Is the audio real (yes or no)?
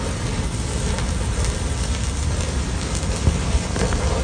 yes